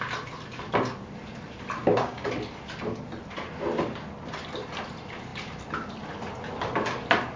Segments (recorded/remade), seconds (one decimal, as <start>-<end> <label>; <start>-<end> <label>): 0.0-1.8 recorded; 1.8-2.3 remade; 2.3-7.4 recorded